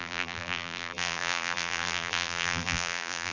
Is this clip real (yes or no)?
no